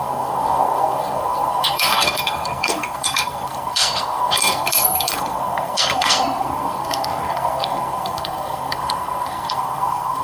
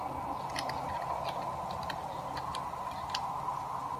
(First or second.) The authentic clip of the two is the second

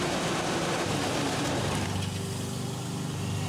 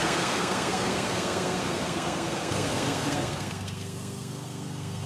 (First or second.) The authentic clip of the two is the first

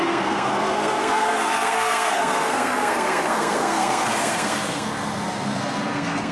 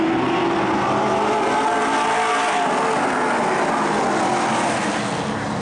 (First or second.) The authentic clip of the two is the second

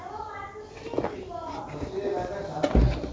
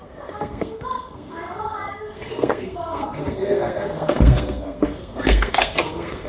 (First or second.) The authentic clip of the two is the first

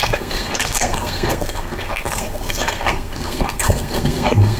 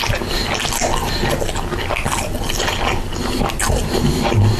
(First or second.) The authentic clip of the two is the second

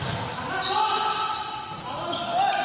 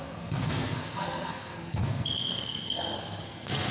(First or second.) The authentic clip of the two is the first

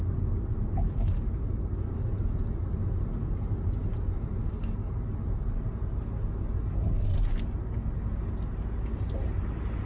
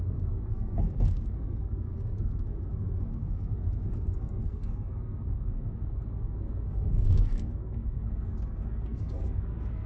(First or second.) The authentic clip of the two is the first